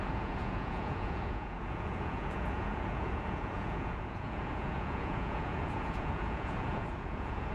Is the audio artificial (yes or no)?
yes